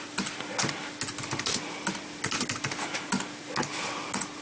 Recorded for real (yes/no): yes